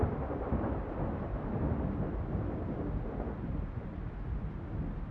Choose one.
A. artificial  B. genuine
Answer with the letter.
B